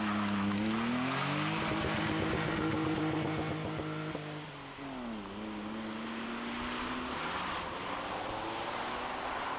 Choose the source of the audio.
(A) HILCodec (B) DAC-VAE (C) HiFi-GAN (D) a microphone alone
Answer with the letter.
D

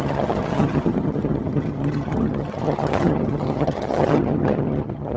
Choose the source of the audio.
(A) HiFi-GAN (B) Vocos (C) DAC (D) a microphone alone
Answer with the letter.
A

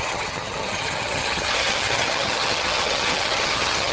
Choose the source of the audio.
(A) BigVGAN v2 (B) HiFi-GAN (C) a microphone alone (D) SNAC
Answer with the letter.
B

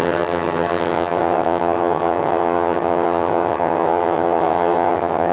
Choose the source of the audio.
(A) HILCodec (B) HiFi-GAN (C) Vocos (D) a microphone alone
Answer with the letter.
B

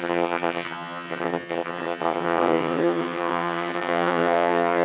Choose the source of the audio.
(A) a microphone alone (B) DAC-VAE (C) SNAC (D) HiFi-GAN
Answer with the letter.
D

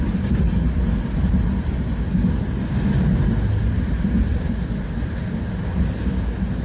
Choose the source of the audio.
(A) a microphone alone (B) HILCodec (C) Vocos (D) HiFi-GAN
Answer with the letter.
A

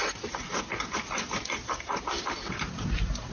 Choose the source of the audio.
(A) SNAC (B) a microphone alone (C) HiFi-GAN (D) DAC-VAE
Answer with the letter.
B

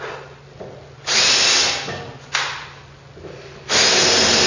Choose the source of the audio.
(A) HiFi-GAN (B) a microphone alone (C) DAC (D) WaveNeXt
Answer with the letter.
B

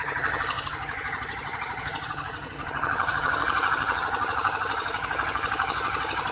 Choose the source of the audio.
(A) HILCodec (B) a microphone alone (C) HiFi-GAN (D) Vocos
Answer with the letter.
C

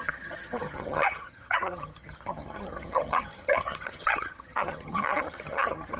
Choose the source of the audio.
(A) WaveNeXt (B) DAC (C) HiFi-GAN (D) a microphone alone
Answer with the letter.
C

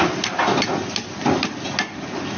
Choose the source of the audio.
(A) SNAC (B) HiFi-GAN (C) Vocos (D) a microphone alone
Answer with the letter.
D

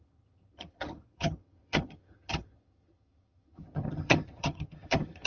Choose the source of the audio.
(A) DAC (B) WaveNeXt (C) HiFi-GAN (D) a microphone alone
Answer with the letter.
C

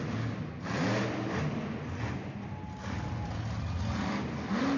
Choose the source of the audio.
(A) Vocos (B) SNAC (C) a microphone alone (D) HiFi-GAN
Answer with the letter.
C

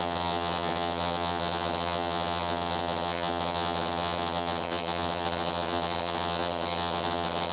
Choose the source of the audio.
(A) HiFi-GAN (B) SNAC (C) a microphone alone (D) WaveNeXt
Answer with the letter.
A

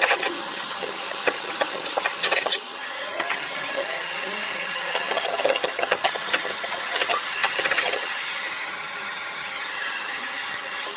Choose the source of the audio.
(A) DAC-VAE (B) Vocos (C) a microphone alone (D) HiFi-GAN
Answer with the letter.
D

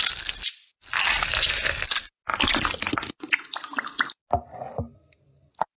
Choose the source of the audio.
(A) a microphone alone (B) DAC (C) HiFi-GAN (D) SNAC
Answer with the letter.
A